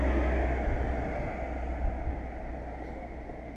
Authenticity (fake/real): real